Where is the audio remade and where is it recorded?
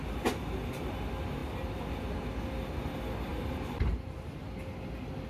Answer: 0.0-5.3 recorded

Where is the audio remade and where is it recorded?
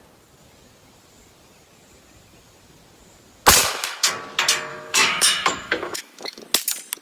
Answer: 0.0-3.6 recorded; 3.6-4.1 remade; 4.1-4.7 recorded; 4.7-6.4 remade; 6.4-7.0 recorded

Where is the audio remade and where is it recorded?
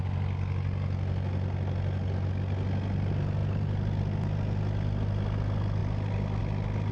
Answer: 0.0-6.9 recorded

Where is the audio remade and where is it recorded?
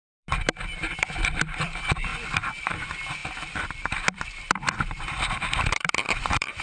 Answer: 0.0-2.1 remade; 2.1-2.7 recorded; 2.7-3.2 remade; 3.2-3.9 recorded; 3.9-6.6 remade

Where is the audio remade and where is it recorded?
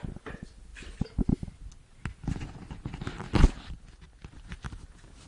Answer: 0.0-5.3 recorded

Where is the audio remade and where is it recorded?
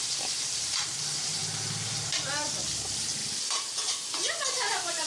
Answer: 0.0-1.4 remade; 1.4-2.6 recorded; 2.6-5.1 remade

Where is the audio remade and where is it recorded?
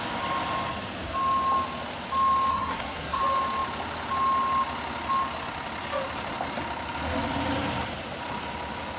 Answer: 0.0-2.5 recorded; 2.5-3.2 remade; 3.2-9.0 recorded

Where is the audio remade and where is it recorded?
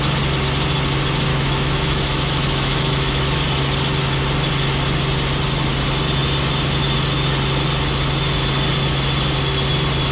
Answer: 0.0-1.3 recorded; 1.3-3.4 remade; 3.4-10.1 recorded